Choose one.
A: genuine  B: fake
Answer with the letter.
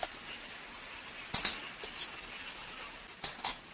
A